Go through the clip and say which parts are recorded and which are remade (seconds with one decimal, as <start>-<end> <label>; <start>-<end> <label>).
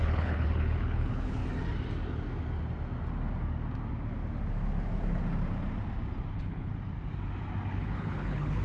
0.0-1.4 remade; 1.4-6.3 recorded; 6.3-6.7 remade; 6.7-7.7 recorded; 7.7-8.6 remade